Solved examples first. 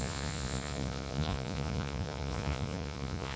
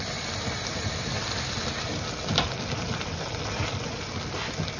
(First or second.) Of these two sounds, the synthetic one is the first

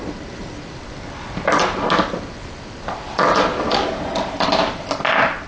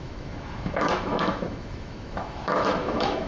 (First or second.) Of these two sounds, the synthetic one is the second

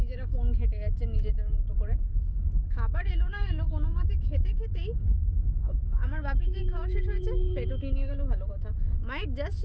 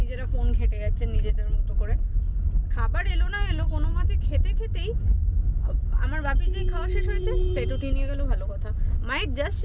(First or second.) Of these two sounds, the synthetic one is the first